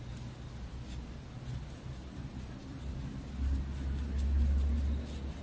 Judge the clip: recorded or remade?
recorded